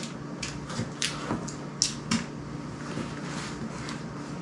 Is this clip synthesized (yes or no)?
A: no